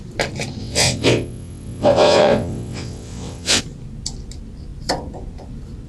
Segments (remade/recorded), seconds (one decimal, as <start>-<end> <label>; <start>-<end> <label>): 0.0-0.6 recorded; 0.6-3.6 remade; 3.6-5.9 recorded

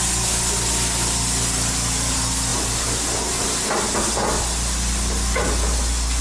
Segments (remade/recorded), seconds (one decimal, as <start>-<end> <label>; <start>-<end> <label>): 0.0-6.2 recorded

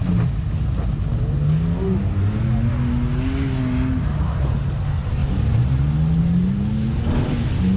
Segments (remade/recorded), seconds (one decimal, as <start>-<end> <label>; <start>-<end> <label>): 0.0-7.8 recorded

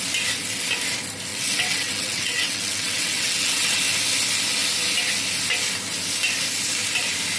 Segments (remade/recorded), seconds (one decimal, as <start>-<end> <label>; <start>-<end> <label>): 0.0-1.3 recorded; 1.3-3.8 remade; 3.8-7.4 recorded